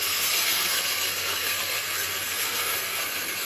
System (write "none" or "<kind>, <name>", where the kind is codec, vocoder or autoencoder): codec, SNAC